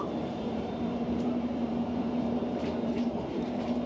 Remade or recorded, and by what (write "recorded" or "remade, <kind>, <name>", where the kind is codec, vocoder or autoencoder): remade, vocoder, BigVGAN v2